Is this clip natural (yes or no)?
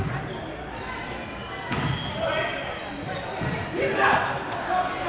yes